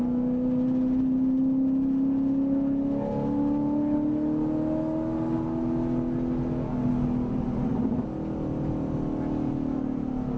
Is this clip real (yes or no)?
yes